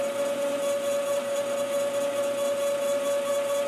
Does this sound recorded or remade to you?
recorded